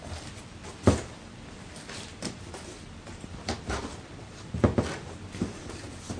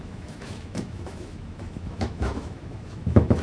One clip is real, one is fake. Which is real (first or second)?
first